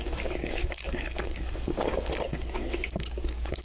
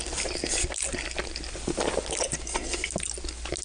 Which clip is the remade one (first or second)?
first